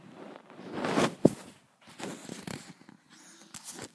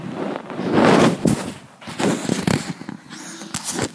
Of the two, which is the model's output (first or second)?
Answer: first